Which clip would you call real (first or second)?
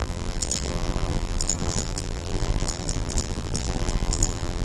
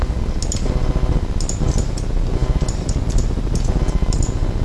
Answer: second